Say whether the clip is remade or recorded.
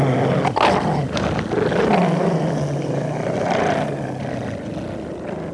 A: recorded